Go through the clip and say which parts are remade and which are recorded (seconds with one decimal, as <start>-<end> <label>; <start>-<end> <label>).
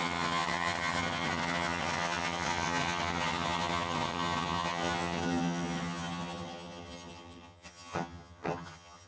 0.0-9.1 remade